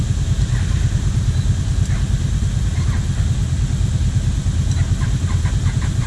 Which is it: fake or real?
real